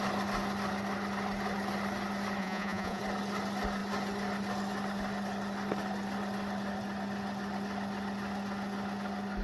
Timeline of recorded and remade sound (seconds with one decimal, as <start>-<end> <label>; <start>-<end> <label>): 0.0-2.4 recorded; 2.4-3.0 remade; 3.0-9.4 recorded